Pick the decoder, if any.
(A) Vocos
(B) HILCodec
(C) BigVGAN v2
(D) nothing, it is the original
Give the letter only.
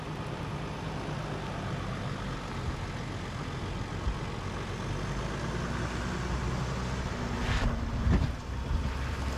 D